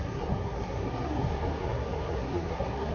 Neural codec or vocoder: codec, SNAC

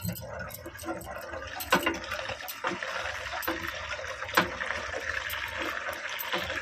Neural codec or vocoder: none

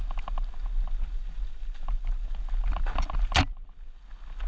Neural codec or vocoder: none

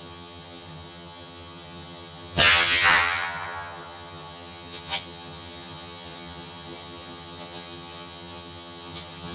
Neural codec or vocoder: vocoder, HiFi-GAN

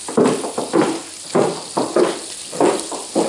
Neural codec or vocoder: none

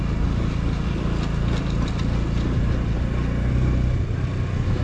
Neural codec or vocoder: none